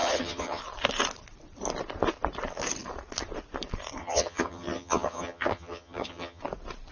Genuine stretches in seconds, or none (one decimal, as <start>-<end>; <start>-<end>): 0.6-4.0; 6.4-6.9